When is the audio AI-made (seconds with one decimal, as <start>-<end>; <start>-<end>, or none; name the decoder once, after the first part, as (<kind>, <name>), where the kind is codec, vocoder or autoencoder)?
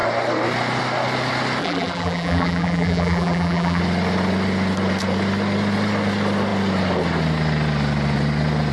1.6-3.8 (vocoder, BigVGAN v2)